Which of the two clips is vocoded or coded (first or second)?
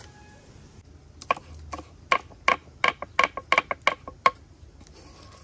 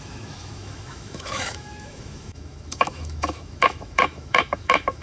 second